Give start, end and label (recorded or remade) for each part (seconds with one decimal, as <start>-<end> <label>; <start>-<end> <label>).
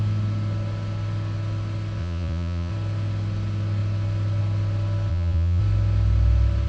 0.0-2.0 recorded; 2.0-2.7 remade; 2.7-5.1 recorded; 5.1-5.6 remade; 5.6-6.7 recorded